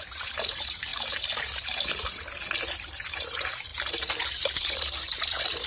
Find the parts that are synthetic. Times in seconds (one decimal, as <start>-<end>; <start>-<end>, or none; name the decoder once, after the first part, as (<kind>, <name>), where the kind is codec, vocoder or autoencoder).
0.0-0.9 (vocoder, BigVGAN v2); 3.1-3.7; 4.2-5.7